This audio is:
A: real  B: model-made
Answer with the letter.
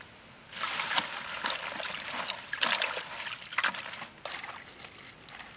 A